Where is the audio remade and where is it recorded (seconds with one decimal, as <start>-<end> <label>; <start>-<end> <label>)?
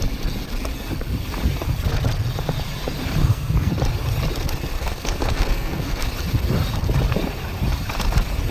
0.0-3.2 recorded; 3.2-3.7 remade; 3.7-4.8 recorded; 4.8-6.1 remade; 6.1-8.5 recorded